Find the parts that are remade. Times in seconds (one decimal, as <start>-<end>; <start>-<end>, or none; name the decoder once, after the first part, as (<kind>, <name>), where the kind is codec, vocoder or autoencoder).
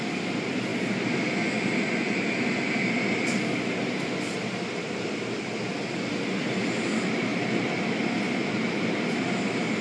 none